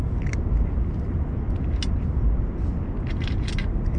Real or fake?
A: real